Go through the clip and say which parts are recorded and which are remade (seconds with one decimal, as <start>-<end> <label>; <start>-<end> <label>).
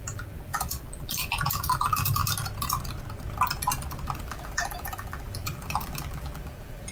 0.0-2.2 remade; 2.2-4.2 recorded; 4.2-6.9 remade